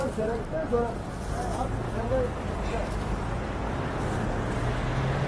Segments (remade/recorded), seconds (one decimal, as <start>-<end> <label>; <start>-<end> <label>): 0.0-5.3 recorded